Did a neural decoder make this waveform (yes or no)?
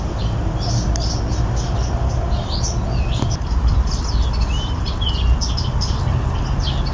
no